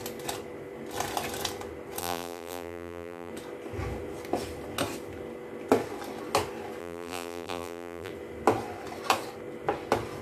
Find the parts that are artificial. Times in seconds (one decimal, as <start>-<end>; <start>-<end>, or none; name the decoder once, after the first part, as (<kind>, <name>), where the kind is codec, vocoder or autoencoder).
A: 2.0-3.3 (vocoder, BigVGAN v2); 6.8-8.1